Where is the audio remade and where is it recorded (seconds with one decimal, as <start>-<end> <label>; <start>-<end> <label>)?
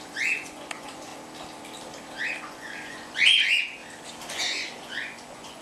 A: 0.0-1.1 remade; 1.1-2.4 recorded; 2.4-3.8 remade; 3.8-4.3 recorded; 4.3-5.6 remade